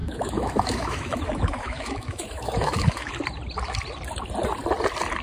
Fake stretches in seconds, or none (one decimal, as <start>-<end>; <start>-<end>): 0.0-3.1

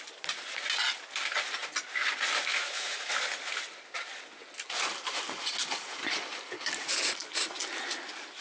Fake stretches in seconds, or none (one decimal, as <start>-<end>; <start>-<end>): 2.5-3.1